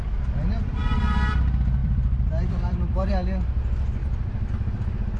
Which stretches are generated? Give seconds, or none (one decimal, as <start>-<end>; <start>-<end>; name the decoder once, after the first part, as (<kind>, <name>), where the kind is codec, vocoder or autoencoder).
0.8-1.4 (vocoder, BigVGAN v2); 1.8-3.1; 4.0-4.5

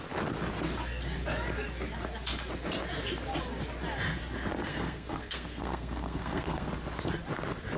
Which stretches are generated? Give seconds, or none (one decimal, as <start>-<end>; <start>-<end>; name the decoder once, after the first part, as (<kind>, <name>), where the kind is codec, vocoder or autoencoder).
4.7-6.7 (codec, SNAC)

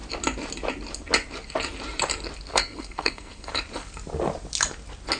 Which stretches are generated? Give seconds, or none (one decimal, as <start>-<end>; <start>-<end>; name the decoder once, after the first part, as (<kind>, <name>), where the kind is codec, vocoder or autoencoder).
2.5-3.5 (codec, SNAC)

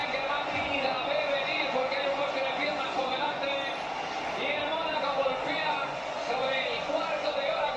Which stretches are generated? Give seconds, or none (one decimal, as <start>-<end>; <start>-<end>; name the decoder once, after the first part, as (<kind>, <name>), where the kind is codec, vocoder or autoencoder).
0.0-3.4 (vocoder, Vocos); 4.9-7.8